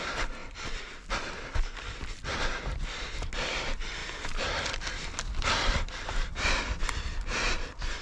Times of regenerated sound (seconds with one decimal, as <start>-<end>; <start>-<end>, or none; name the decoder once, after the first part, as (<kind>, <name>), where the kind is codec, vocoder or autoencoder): 0.4-1.1 (vocoder, BigVGAN v2)